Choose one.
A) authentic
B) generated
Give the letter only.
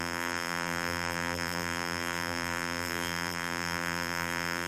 B